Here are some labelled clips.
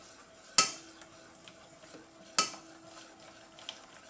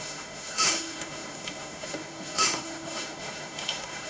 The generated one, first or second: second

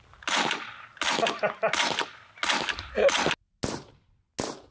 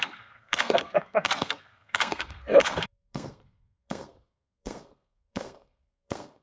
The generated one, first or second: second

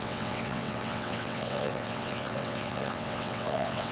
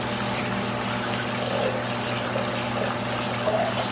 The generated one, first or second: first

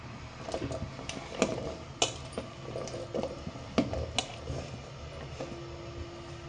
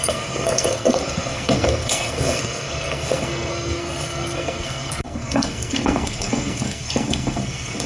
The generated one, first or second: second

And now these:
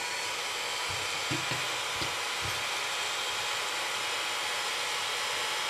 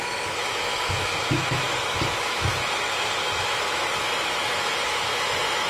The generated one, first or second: second